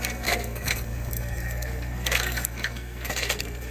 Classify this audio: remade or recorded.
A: remade